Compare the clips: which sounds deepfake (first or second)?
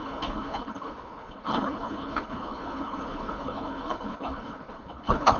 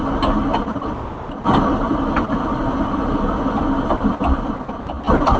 first